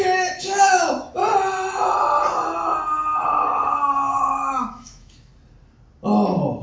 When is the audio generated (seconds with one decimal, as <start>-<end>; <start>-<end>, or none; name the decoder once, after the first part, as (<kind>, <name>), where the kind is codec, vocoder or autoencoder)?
0.0-1.2 (autoencoder, DAC-VAE); 4.2-5.3